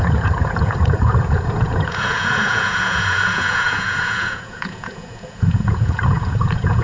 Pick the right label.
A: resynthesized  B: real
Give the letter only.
A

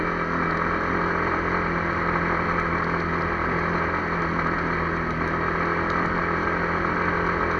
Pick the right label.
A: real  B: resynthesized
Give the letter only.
A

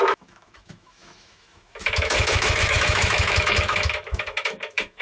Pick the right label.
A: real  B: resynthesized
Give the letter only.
B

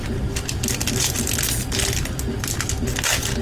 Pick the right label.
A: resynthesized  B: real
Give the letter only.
B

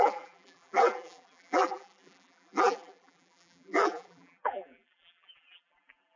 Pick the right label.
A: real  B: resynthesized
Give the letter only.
B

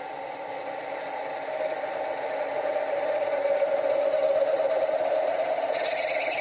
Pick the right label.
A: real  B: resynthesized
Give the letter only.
A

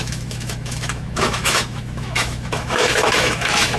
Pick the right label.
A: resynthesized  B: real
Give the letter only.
A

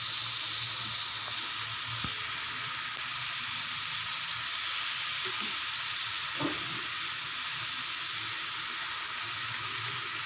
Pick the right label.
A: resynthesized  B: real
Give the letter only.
B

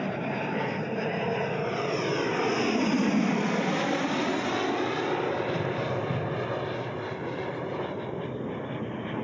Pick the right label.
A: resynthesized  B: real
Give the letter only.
B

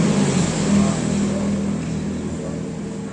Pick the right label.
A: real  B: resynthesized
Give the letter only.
A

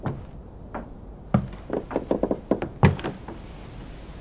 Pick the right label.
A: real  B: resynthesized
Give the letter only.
A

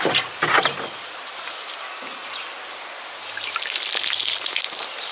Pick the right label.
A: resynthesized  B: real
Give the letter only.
B